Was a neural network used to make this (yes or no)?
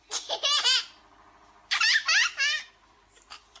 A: yes